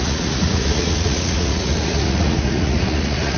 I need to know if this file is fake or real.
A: fake